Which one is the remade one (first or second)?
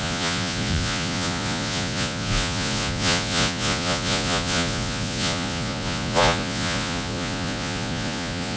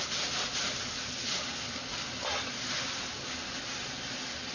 first